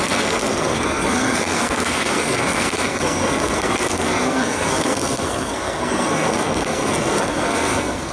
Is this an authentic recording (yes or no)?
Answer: no